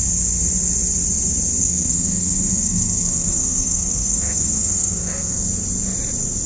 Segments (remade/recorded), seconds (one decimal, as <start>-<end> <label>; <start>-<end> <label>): 0.0-1.6 recorded; 1.6-5.5 remade; 5.5-6.5 recorded

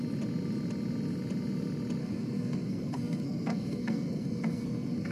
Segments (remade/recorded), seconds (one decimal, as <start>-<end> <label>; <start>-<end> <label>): 0.0-2.0 recorded; 2.0-5.1 remade

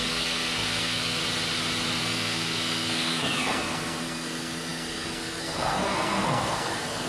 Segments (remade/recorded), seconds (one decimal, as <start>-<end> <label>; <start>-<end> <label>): 0.0-1.2 remade; 1.2-2.0 recorded; 2.0-7.1 remade

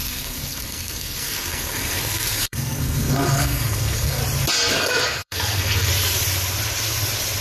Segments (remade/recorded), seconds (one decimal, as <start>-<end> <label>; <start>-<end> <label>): 0.0-4.2 remade; 4.2-4.7 recorded; 4.7-5.9 remade; 5.9-7.4 recorded

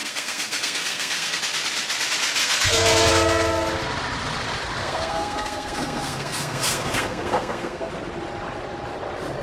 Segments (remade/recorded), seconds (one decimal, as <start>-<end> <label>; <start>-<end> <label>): 0.0-1.4 remade; 1.4-2.4 recorded; 2.4-3.1 remade; 3.1-4.8 recorded; 4.8-7.9 remade; 7.9-9.4 recorded

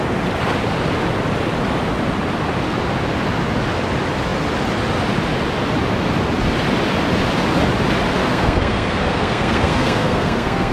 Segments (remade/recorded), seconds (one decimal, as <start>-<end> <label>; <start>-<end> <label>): 0.0-8.2 recorded; 8.2-10.7 remade

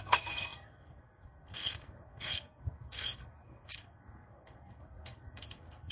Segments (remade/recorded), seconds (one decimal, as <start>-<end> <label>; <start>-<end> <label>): 0.0-5.9 remade

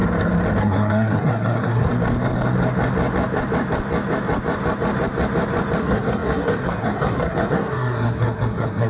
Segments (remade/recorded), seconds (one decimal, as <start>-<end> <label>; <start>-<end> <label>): 0.0-0.6 recorded; 0.6-1.9 remade; 1.9-5.8 recorded; 5.8-8.9 remade